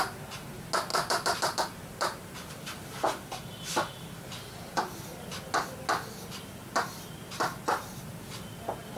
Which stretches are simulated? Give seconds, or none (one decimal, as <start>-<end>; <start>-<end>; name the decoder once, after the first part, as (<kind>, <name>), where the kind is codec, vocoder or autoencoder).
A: 0.9-2.5 (vocoder, BigVGAN v2)